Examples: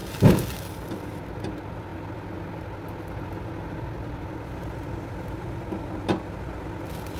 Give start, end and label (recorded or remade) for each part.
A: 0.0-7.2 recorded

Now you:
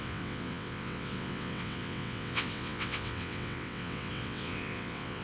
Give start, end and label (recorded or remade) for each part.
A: 0.0-5.2 remade

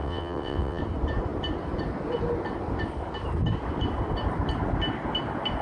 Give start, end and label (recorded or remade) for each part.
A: 0.0-0.8 remade; 0.8-5.6 recorded

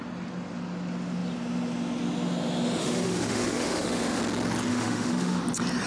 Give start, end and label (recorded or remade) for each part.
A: 0.0-2.8 recorded; 2.8-4.2 remade; 4.2-4.7 recorded; 4.7-5.4 remade; 5.4-5.9 recorded